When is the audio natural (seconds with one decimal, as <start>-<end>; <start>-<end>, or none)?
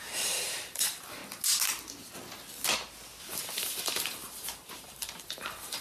1.2-3.2